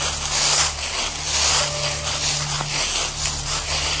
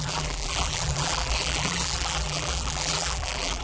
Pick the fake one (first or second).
second